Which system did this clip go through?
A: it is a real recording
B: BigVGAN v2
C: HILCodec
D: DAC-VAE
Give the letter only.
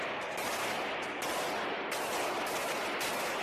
A